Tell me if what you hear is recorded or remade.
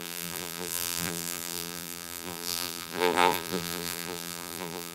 remade